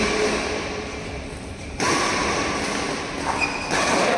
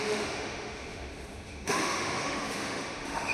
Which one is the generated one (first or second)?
second